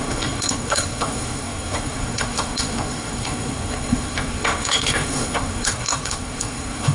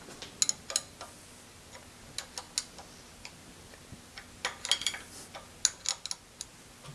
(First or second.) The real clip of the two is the second